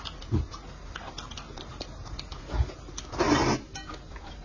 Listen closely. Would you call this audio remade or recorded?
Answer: recorded